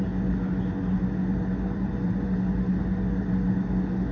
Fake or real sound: real